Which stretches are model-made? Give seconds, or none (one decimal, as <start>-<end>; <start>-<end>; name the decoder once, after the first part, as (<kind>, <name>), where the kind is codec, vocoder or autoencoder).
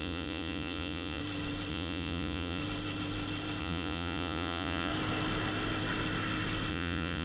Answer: 0.0-1.2 (vocoder, Vocos); 1.7-2.6; 3.6-4.9; 6.7-7.2